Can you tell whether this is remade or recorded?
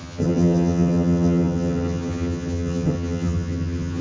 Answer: remade